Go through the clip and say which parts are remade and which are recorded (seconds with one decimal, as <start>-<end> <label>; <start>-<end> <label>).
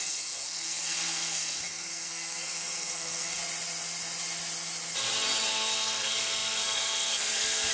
0.0-3.4 remade; 3.4-5.5 recorded; 5.5-7.7 remade